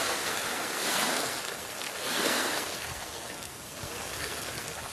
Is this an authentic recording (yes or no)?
no